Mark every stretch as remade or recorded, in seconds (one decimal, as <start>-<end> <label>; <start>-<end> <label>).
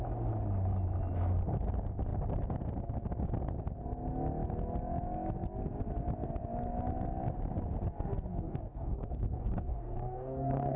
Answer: 0.0-8.3 recorded; 8.3-10.8 remade